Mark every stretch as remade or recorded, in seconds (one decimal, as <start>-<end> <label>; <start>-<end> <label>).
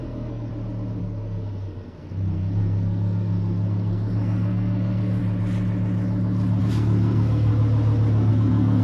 0.0-0.5 remade; 0.5-1.0 recorded; 1.0-5.2 remade; 5.2-6.6 recorded; 6.6-7.5 remade; 7.5-8.3 recorded; 8.3-8.8 remade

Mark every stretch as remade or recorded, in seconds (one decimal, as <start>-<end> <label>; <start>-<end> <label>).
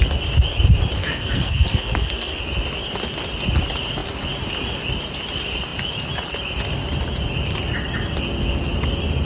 0.0-1.0 recorded; 1.0-2.4 remade; 2.4-9.3 recorded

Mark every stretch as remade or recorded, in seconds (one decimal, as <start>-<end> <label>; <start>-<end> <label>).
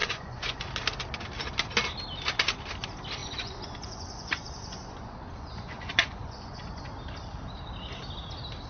0.0-0.6 remade; 0.6-3.2 recorded; 3.2-6.8 remade; 6.8-8.7 recorded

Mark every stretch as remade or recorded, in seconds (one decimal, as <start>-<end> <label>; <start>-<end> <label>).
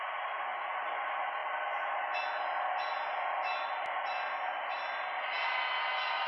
0.0-6.3 recorded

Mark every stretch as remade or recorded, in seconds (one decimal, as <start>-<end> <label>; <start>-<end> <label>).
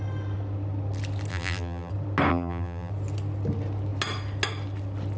0.0-1.3 recorded; 1.3-1.9 remade; 1.9-2.3 recorded; 2.3-2.9 remade; 2.9-5.2 recorded